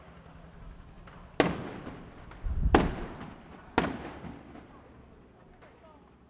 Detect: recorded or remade recorded